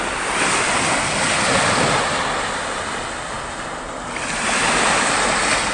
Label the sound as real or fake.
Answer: real